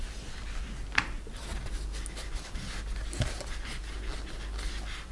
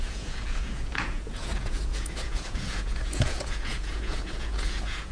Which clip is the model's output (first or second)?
second